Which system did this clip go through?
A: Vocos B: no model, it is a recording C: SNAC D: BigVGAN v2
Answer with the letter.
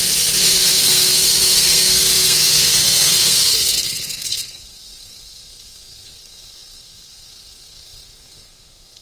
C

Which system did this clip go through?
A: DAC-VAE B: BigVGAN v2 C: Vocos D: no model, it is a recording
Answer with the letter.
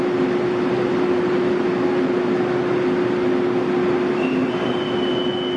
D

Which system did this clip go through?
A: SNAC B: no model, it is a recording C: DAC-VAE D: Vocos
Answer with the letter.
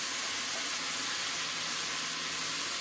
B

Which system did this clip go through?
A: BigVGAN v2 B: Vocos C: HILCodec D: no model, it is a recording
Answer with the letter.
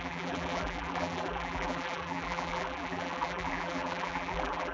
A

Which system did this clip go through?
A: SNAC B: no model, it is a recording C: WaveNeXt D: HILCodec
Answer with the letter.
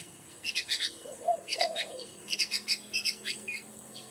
A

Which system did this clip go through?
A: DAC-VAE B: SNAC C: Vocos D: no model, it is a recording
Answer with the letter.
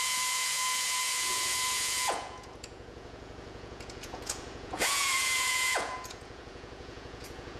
C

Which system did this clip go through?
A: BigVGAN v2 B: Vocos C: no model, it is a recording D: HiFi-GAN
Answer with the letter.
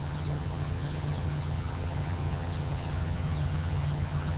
D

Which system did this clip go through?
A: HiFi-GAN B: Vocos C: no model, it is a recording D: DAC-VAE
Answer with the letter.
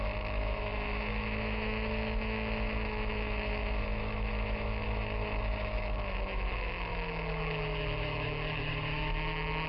D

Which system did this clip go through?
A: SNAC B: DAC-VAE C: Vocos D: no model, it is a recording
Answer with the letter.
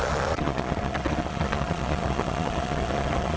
C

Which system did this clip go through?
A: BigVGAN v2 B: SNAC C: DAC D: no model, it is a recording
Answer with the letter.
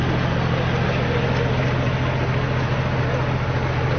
D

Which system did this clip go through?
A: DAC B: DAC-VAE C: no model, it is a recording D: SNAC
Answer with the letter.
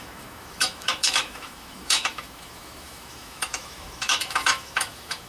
B